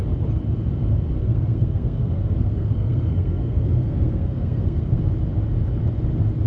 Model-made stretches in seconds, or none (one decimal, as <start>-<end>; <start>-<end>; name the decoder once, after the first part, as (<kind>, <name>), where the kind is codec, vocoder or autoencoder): 1.2-5.1 (codec, SNAC)